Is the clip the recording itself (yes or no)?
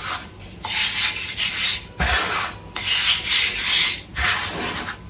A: yes